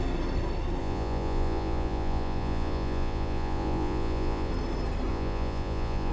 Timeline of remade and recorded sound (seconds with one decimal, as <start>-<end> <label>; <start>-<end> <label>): 0.0-0.8 recorded; 0.8-4.5 remade; 4.5-5.1 recorded; 5.1-6.1 remade